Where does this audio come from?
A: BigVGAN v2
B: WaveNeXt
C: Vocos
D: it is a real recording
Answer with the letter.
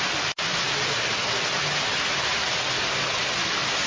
D